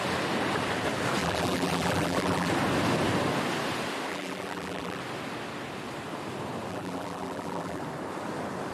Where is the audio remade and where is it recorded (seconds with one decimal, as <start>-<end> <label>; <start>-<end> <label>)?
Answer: 0.0-1.2 recorded; 1.2-2.5 remade; 2.5-4.1 recorded; 4.1-5.0 remade; 5.0-6.7 recorded; 6.7-7.8 remade; 7.8-8.7 recorded